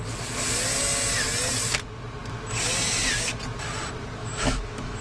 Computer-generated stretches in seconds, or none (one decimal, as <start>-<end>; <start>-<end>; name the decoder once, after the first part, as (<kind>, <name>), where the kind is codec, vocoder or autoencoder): 4.2-5.0 (autoencoder, DAC-VAE)